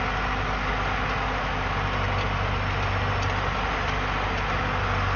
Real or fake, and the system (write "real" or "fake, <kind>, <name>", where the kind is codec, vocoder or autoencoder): real